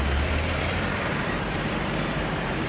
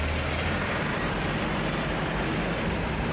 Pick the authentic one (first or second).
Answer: second